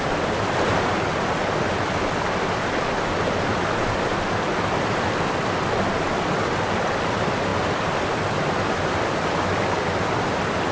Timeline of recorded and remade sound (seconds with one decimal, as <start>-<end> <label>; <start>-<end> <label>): 0.0-10.7 recorded